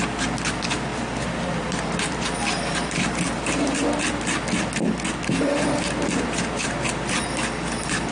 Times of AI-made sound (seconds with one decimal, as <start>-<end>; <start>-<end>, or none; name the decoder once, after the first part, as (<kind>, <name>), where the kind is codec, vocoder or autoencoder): 0.9-3.1 (vocoder, BigVGAN v2)